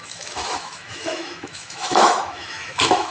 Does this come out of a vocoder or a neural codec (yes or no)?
yes